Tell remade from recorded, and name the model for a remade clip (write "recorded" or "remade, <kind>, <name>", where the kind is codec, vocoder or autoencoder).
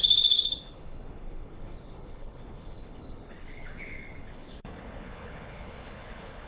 remade, codec, HILCodec